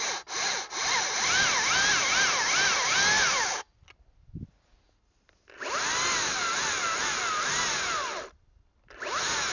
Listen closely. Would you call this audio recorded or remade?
recorded